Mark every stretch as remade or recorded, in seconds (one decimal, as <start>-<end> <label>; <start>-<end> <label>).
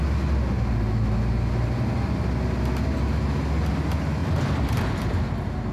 0.0-5.7 recorded